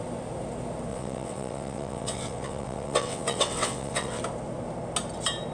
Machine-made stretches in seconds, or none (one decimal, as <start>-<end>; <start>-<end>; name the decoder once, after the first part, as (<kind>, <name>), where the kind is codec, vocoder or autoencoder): 0.9-4.2 (vocoder, WaveNeXt)